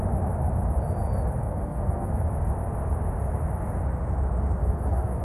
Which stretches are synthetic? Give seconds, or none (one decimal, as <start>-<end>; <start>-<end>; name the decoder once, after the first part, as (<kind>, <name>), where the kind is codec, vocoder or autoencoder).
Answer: 1.4-2.2 (codec, SNAC); 4.6-5.2